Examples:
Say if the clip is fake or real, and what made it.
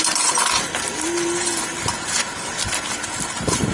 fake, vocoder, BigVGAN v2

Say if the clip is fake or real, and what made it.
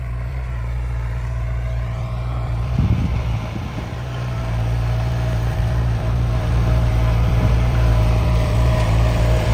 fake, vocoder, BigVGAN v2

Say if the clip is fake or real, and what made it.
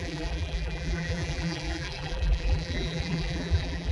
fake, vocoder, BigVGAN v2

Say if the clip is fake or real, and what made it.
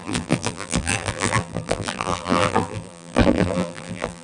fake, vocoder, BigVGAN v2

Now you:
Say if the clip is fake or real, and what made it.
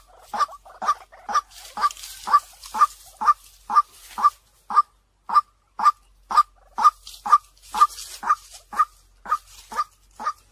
real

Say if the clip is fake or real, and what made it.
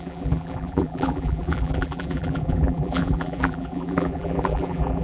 fake, vocoder, BigVGAN v2